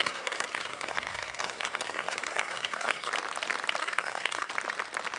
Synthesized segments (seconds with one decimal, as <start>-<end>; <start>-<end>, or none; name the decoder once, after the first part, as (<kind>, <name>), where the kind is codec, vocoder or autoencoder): 0.0-3.1 (codec, SNAC); 3.8-4.5